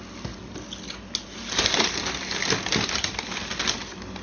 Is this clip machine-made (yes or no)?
no